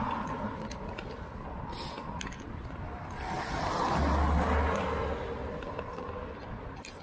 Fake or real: real